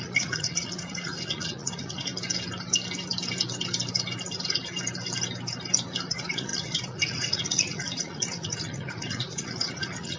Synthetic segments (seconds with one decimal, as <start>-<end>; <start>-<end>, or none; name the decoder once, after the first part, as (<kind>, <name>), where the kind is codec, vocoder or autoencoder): 0.0-2.1 (vocoder, Vocos); 6.1-10.2